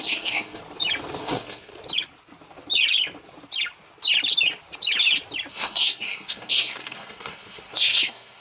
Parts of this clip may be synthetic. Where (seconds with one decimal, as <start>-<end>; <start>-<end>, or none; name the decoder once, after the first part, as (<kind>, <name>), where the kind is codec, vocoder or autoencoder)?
0.0-0.6 (codec, SNAC); 1.2-1.7; 5.5-8.4